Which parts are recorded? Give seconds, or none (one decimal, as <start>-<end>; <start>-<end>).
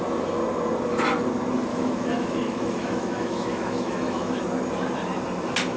0.0-1.7; 4.4-5.8